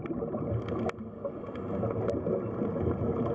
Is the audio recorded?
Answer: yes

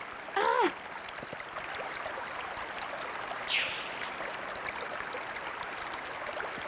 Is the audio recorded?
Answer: yes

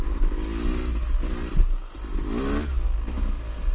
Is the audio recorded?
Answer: yes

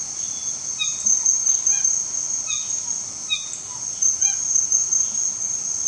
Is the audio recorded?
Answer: yes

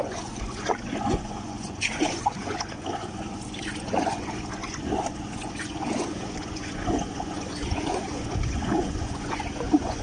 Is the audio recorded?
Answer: no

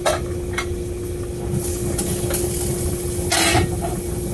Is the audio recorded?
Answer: yes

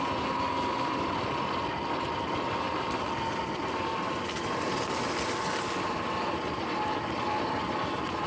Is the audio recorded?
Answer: yes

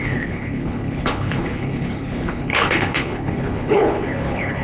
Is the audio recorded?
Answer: no